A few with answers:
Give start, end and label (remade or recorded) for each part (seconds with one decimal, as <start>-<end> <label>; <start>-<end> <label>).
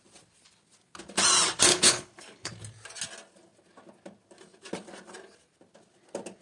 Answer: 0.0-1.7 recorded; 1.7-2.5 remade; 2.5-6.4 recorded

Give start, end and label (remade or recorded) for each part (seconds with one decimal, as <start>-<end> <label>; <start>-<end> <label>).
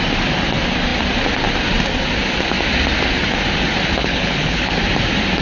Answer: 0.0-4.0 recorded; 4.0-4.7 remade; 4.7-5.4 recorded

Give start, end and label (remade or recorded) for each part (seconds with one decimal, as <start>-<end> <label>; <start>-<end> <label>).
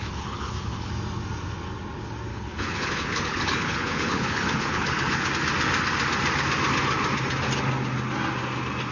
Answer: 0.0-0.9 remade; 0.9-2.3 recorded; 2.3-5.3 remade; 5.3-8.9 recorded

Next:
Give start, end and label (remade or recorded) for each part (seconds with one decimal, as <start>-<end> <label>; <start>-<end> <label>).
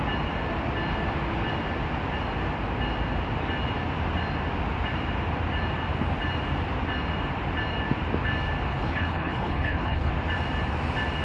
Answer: 0.0-8.7 recorded; 8.7-10.1 remade; 10.1-11.2 recorded